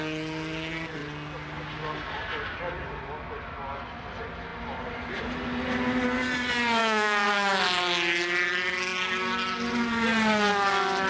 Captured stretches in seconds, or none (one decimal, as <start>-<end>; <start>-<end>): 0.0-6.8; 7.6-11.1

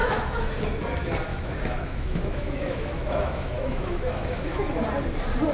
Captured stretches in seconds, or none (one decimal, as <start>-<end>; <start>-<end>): 0.5-1.3; 4.6-5.5

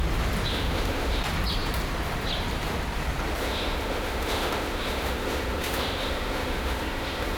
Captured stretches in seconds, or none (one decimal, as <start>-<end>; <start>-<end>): 0.0-0.5; 1.2-3.4

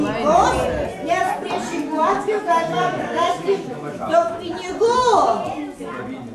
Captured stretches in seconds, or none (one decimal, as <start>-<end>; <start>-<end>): 0.0-1.7; 4.4-6.3